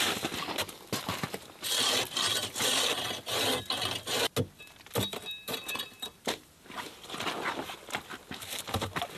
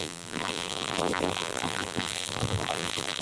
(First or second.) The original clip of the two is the first